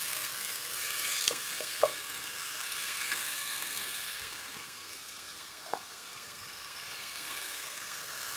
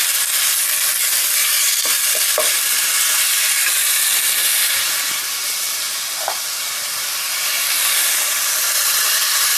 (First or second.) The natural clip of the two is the second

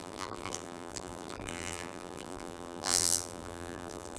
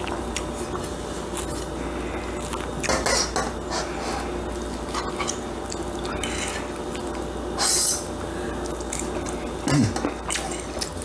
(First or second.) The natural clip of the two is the second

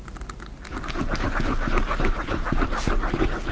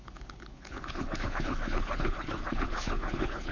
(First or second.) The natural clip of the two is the first